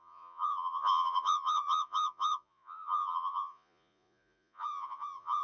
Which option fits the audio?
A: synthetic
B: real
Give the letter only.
A